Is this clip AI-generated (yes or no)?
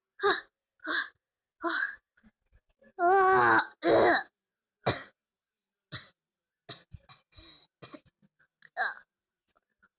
no